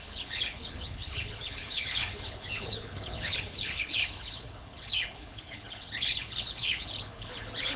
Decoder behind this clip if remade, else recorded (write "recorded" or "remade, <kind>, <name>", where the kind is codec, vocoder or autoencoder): remade, codec, HILCodec